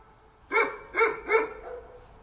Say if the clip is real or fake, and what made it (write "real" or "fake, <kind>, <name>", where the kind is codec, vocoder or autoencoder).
real